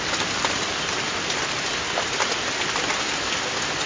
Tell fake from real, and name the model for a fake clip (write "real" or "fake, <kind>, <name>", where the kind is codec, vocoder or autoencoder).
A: real